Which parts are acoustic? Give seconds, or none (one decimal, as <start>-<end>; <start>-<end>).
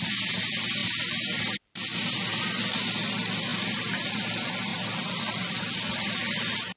0.0-3.5; 4.1-4.7